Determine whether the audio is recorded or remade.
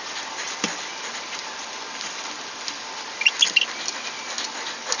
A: recorded